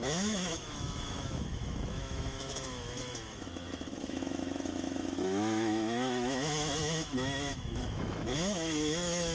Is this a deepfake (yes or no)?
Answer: yes